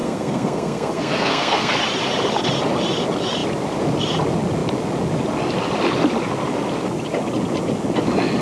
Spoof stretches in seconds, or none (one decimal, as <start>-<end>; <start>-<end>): 0.0-1.7